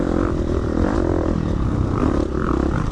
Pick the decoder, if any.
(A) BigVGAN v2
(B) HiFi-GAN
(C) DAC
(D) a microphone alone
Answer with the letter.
A